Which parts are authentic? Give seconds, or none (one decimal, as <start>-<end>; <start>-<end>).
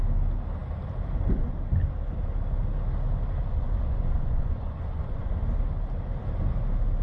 0.0-3.4; 5.3-7.0